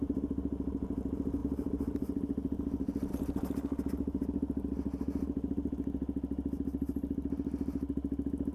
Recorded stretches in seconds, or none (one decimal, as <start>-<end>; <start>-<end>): 0.0-8.5